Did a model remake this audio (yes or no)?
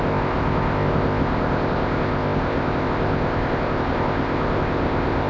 yes